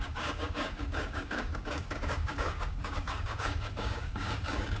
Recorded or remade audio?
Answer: remade